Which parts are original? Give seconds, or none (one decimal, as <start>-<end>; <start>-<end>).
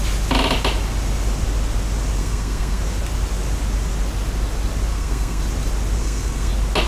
0.0-2.2; 2.8-4.9; 5.4-6.0; 6.5-6.9